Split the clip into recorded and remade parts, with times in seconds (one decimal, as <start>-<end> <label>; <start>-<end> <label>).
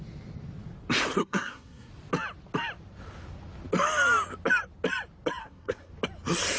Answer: 0.0-1.2 recorded; 1.2-1.9 remade; 1.9-5.4 recorded; 5.4-5.9 remade; 5.9-6.6 recorded